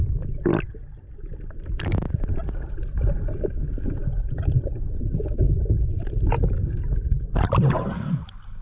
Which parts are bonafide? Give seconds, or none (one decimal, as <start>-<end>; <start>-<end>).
0.0-8.6